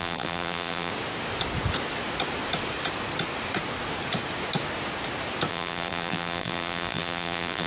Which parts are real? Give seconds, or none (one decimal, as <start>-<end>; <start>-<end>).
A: 0.9-5.5